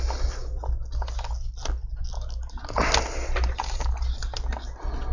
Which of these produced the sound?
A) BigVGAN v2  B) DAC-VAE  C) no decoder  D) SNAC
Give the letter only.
C